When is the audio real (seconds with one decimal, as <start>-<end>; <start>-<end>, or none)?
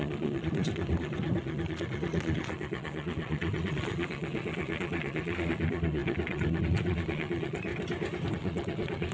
7.7-8.3